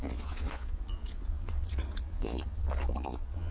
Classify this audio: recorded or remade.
remade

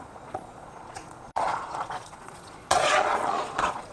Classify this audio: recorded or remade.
remade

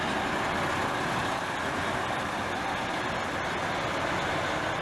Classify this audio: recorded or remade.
recorded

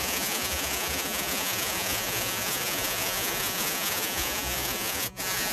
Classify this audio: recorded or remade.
remade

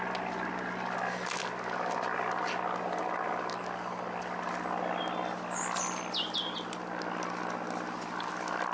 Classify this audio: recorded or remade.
recorded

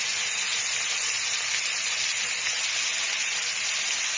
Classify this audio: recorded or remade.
recorded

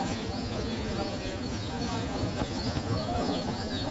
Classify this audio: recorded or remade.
remade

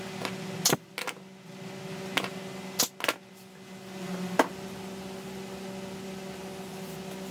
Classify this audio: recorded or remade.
recorded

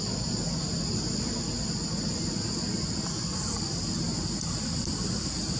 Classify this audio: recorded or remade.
recorded